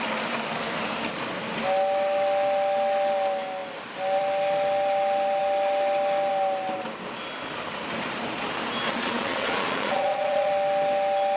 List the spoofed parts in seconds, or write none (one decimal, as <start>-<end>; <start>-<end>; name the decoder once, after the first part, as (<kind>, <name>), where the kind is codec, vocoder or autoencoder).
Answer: 8.9-10.5 (vocoder, Vocos)